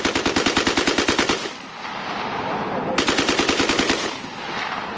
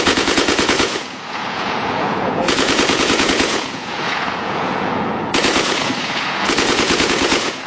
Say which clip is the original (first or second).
first